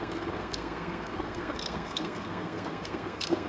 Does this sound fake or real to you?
fake